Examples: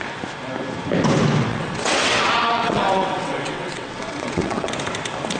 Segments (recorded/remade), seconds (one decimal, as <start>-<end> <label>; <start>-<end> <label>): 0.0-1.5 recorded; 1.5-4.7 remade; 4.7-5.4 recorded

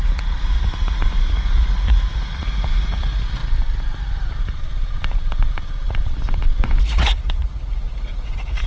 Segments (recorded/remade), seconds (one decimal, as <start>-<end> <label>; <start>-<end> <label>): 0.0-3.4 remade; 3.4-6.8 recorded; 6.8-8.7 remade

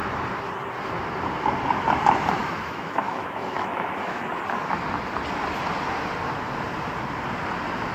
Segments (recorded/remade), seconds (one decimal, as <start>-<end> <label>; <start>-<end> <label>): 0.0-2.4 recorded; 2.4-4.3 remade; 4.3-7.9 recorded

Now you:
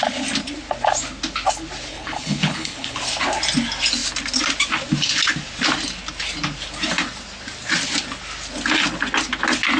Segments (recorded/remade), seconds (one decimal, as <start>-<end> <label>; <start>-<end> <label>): 0.0-1.9 recorded; 1.9-3.0 remade; 3.0-9.8 recorded